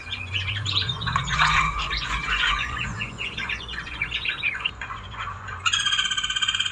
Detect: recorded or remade remade